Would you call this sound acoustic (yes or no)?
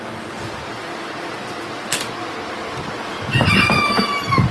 yes